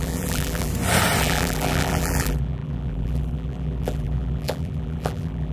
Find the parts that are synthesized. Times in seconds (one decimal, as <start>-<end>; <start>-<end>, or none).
0.0-0.7; 1.2-5.5